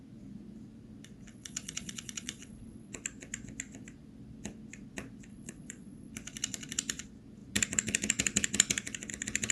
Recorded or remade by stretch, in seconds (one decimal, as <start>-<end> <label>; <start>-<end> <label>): 0.0-1.3 recorded; 1.3-2.9 remade; 2.9-5.3 recorded; 5.3-6.1 remade; 6.1-9.5 recorded